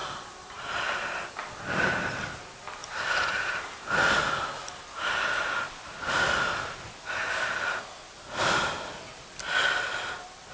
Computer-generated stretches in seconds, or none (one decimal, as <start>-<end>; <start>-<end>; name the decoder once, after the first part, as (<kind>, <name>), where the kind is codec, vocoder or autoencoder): 2.8-3.9 (vocoder, BigVGAN v2)